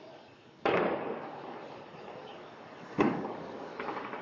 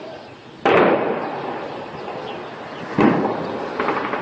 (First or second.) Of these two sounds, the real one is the second